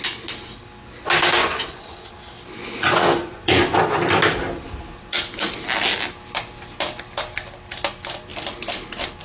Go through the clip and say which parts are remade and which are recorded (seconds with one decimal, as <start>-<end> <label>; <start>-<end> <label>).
0.0-1.4 recorded; 1.4-2.1 remade; 2.1-2.6 recorded; 2.6-3.6 remade; 3.6-9.2 recorded